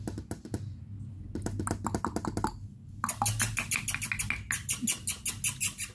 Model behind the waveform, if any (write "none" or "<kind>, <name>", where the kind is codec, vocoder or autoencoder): none